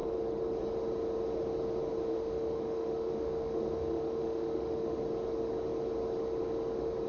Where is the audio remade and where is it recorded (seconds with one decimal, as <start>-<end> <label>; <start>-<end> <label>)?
0.0-2.1 recorded; 2.1-5.0 remade; 5.0-7.1 recorded